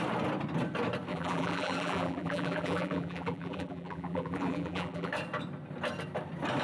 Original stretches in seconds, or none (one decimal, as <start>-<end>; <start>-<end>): 0.0-1.1; 5.1-6.6